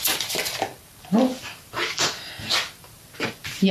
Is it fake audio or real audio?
fake